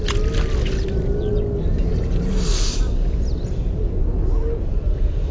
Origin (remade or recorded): recorded